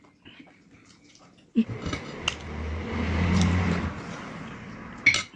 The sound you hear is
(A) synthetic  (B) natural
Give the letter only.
B